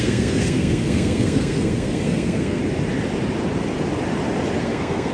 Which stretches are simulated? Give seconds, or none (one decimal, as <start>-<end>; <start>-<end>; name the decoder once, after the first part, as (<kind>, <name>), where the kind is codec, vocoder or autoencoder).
0.0-2.6 (codec, SNAC); 4.6-5.1